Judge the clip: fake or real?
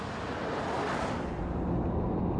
real